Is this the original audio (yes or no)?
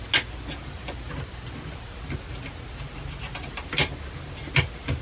yes